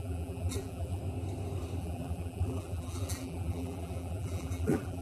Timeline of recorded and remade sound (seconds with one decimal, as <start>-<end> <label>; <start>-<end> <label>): 0.0-1.0 remade; 1.0-1.8 recorded; 1.8-5.0 remade